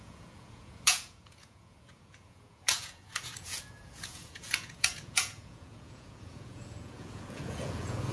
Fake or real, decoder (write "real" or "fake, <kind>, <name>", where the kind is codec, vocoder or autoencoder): fake, vocoder, Vocos